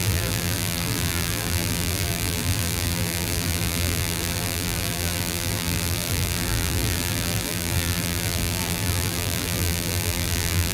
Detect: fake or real fake